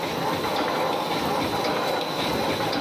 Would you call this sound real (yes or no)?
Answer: yes